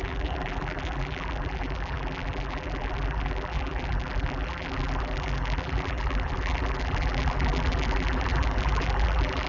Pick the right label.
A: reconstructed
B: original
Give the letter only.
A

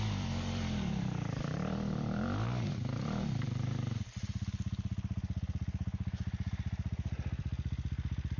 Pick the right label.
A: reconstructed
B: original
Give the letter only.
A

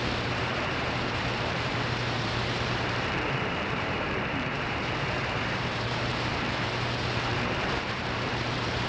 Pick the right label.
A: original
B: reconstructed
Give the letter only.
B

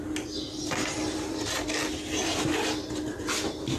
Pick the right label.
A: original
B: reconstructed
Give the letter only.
A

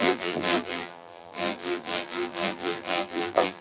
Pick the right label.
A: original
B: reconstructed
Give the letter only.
B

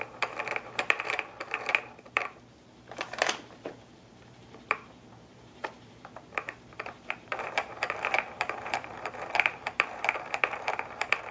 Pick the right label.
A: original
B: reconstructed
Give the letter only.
B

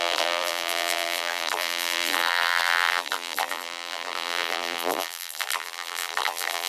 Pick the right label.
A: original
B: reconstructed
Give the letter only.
B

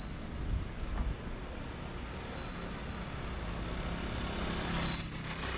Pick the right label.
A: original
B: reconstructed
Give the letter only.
A